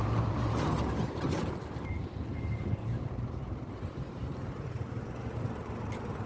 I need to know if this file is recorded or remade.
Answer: remade